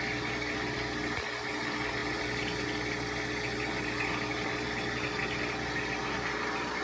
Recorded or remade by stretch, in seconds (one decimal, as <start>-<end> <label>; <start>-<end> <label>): 0.0-6.8 recorded